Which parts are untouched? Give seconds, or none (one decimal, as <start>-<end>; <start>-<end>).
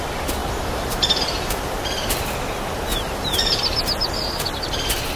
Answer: 0.0-0.4; 1.2-2.9; 3.8-5.2